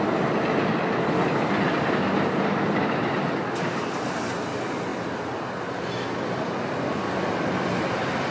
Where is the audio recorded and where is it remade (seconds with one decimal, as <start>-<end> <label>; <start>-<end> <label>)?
0.0-8.3 recorded